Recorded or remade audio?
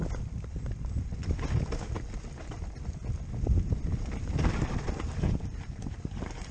recorded